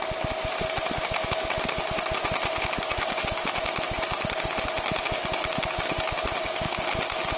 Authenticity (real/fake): real